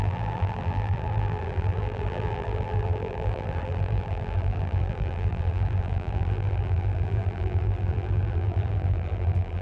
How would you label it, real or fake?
fake